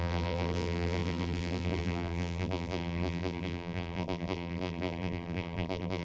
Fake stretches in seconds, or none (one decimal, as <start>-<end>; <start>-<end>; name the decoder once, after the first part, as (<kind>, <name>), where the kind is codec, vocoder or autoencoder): 0.0-6.0 (vocoder, BigVGAN v2)